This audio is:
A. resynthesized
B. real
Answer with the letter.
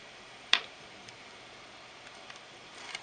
A